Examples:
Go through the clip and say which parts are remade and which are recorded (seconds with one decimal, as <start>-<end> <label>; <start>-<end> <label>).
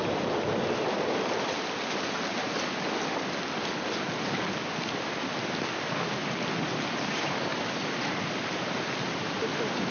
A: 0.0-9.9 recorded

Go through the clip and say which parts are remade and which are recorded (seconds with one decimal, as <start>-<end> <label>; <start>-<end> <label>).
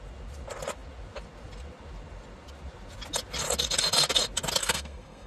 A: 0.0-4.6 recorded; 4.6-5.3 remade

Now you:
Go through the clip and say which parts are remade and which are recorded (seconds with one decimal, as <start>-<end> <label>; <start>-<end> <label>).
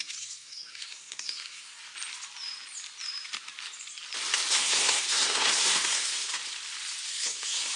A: 0.0-1.8 remade; 1.8-4.5 recorded; 4.5-6.4 remade; 6.4-7.1 recorded; 7.1-7.8 remade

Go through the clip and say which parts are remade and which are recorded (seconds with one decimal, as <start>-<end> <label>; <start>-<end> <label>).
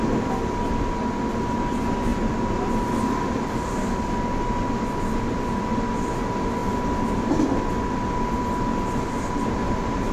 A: 0.0-10.1 recorded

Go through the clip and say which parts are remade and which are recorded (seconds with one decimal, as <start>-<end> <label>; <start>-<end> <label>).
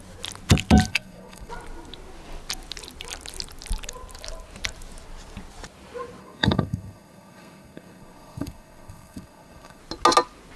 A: 0.0-0.9 recorded; 0.9-1.5 remade; 1.5-6.2 recorded; 6.2-9.8 remade; 9.8-10.6 recorded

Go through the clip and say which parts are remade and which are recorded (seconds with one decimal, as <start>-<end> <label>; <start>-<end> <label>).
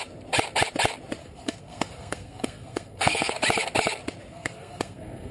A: 0.0-1.2 recorded; 1.2-3.3 remade; 3.3-4.3 recorded; 4.3-5.3 remade